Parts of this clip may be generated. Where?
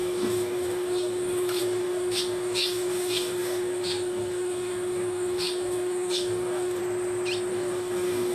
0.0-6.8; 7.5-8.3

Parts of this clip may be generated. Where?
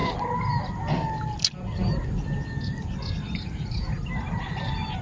none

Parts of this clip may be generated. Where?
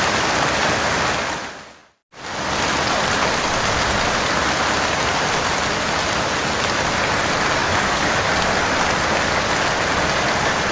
7.6-8.3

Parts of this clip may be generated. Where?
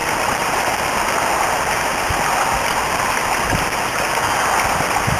none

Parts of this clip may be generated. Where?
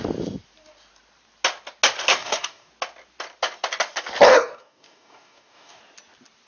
2.1-2.7; 4.3-5.8